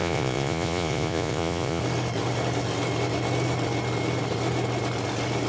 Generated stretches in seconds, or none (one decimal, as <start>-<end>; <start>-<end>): 0.0-1.8